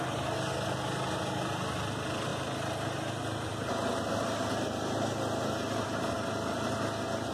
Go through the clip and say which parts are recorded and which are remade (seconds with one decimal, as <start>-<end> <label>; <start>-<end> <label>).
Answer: 0.0-7.3 recorded